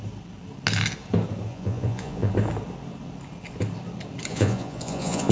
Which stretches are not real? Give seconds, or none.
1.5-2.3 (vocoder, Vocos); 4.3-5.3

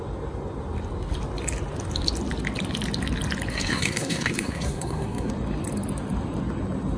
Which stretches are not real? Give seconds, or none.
3.5-5.3 (codec, SNAC)